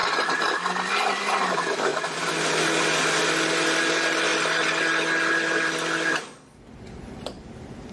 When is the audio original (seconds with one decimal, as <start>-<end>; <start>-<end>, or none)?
0.0-1.5; 1.9-3.2; 4.3-5.3